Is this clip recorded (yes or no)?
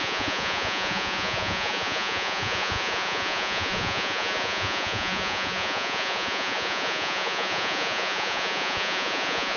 no